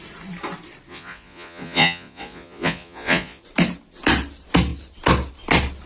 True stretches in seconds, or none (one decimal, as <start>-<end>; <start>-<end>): 0.0-0.9; 3.4-5.9

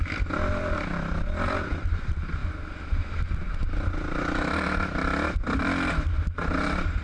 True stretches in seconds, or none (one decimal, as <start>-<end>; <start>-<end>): 0.0-7.0

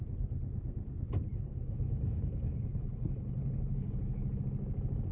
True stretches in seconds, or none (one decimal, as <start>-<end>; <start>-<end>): 0.0-1.3; 4.4-5.1

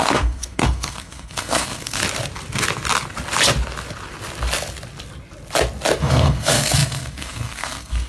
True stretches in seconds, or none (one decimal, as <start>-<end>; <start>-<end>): 2.0-6.0

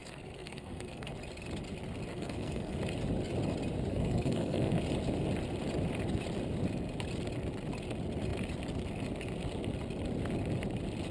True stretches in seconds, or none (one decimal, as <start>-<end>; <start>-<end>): 1.1-2.1; 2.8-3.9; 4.7-11.1

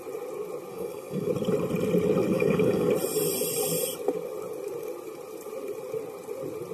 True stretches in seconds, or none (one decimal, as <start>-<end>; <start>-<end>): 0.0-0.7; 1.3-2.3; 2.9-6.7

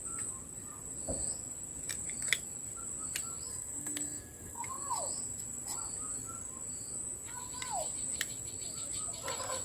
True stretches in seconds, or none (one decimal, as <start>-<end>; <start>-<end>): 0.0-3.5; 4.6-9.6

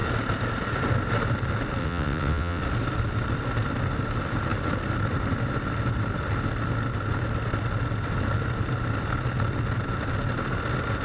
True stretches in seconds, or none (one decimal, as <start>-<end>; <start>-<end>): 0.0-1.8; 2.6-11.0